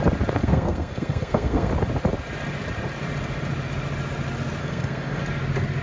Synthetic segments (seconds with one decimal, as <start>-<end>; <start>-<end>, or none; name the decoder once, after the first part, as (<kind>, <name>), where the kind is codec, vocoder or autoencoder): 0.4-1.7 (codec, SNAC); 4.6-5.2